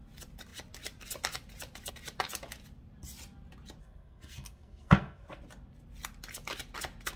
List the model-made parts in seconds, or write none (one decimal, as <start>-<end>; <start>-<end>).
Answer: 3.8-5.4